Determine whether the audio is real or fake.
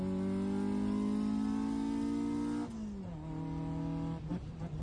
real